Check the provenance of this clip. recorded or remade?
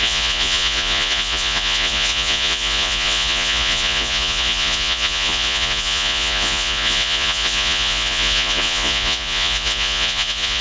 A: remade